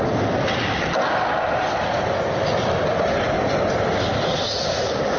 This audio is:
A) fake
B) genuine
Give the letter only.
B